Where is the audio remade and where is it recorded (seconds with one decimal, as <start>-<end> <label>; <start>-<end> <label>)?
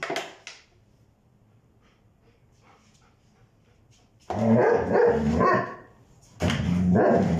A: 0.0-7.4 recorded